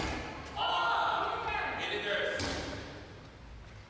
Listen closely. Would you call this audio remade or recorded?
recorded